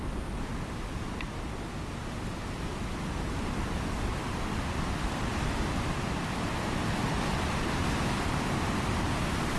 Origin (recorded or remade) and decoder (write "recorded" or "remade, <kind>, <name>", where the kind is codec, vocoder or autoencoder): recorded